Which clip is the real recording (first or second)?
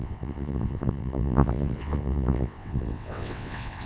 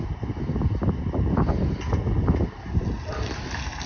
second